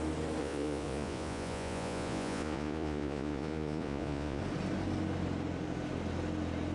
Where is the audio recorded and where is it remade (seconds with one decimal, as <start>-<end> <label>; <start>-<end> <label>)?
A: 0.0-0.4 recorded; 0.4-4.4 remade; 4.4-6.7 recorded